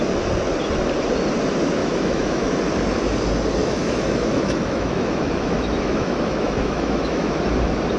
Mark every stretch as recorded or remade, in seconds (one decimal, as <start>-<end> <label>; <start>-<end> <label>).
0.0-1.8 recorded; 1.8-2.5 remade; 2.5-3.6 recorded; 3.6-7.3 remade; 7.3-8.0 recorded